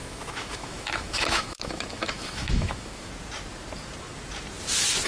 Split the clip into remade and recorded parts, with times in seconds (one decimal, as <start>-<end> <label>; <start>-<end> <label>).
0.0-3.1 remade; 3.1-5.1 recorded